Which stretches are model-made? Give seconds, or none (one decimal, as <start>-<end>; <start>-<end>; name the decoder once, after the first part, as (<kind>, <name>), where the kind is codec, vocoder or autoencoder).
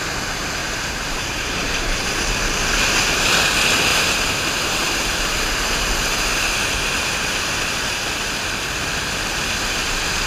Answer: 0.6-2.1 (vocoder, BigVGAN v2); 3.9-5.0